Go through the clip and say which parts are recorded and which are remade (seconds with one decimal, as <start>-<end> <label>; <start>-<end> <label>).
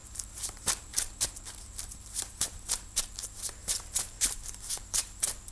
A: 0.0-5.5 remade